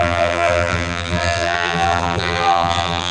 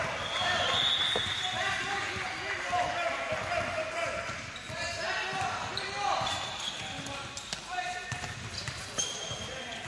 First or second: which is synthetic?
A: first